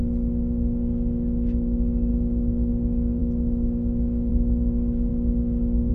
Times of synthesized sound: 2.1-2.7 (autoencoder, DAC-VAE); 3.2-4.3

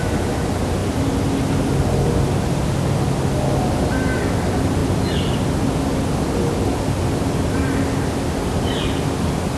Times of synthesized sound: none

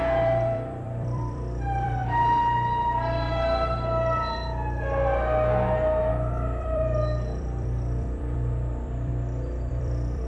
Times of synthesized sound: 0.0-2.0 (vocoder, BigVGAN v2); 6.1-9.1; 9.7-10.3